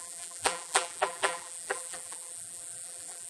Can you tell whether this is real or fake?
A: fake